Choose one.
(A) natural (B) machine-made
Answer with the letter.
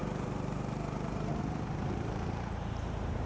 B